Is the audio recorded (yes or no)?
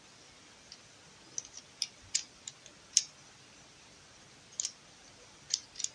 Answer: yes